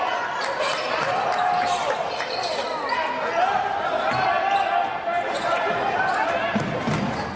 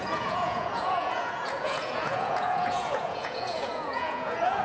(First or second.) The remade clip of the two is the second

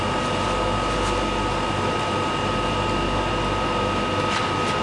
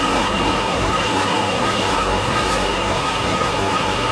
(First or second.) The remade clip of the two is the second